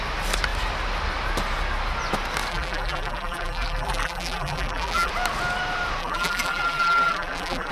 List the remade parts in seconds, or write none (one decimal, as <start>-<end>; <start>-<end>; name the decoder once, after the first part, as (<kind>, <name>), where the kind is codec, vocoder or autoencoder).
2.5-5.1 (vocoder, BigVGAN v2); 6.0-7.7